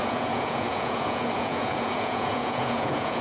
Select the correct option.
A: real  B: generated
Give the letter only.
B